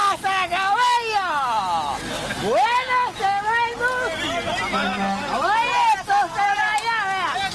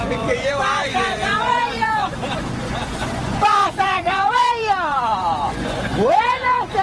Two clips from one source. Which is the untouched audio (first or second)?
first